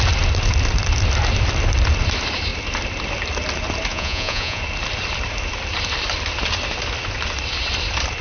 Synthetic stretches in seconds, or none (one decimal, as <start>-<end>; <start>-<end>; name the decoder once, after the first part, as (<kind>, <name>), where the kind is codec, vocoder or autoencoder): 3.9-4.6 (vocoder, Vocos)